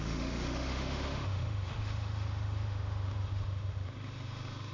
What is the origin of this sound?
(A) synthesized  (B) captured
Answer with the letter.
A